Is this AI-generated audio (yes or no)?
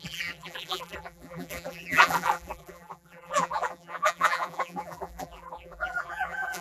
yes